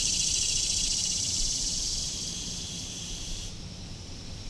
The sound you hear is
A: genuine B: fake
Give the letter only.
B